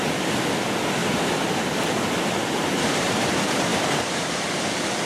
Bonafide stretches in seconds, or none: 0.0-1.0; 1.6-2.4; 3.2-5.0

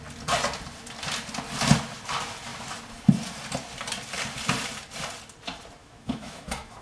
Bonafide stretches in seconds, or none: 0.0-5.8

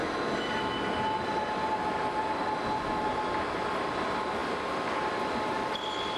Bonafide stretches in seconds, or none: 0.0-6.2

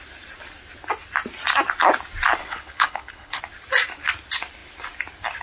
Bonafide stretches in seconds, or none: 0.0-2.4; 3.4-5.4

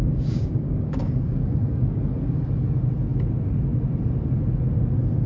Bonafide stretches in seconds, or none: 2.0-5.3

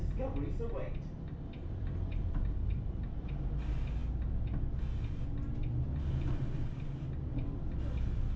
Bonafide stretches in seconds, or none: 0.0-8.4

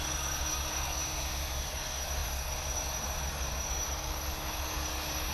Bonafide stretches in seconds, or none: 1.0-1.7

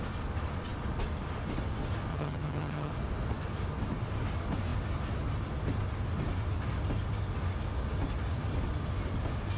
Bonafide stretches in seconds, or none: 0.0-2.1; 2.9-9.6